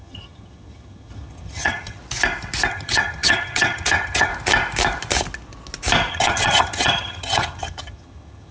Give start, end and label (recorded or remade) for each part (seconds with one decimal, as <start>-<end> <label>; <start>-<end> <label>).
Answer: 0.0-2.0 remade; 2.0-2.7 recorded; 2.7-4.3 remade; 4.3-6.1 recorded; 6.1-8.5 remade